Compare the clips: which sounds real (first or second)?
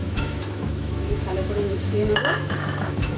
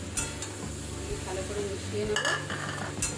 second